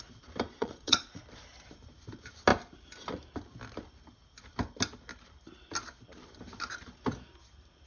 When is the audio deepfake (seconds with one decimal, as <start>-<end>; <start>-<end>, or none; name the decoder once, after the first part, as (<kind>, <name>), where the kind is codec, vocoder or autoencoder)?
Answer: 0.6-1.2 (vocoder, Vocos)